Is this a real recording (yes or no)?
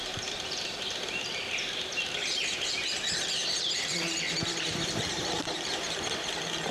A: no